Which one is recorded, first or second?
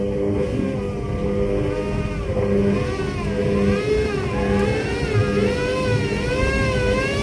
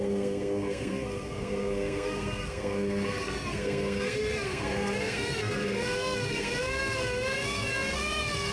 first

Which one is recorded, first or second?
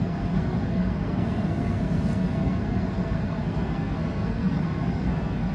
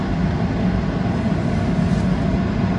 second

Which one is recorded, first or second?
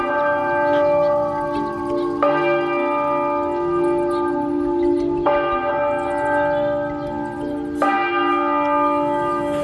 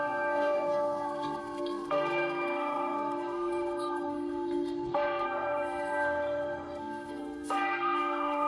first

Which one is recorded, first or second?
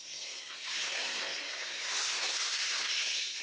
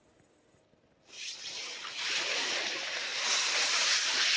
second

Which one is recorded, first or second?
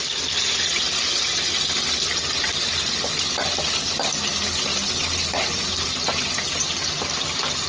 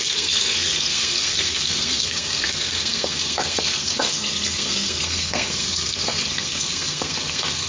first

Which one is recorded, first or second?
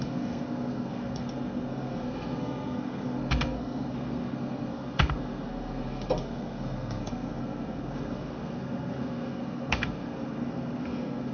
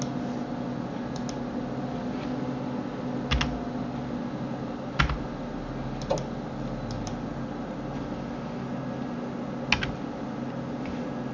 second